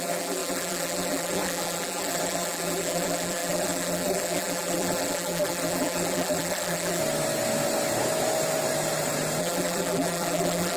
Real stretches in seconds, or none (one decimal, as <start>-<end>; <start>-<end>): 7.0-9.4